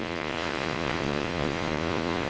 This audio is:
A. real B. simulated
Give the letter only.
B